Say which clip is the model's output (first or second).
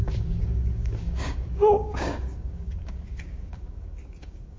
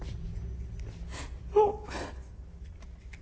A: first